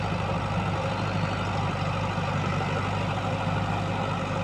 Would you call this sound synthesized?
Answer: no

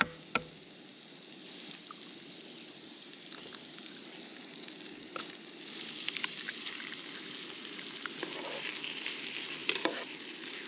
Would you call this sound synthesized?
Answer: no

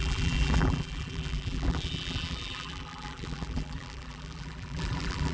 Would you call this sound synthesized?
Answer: yes